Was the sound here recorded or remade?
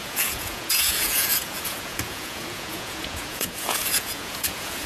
remade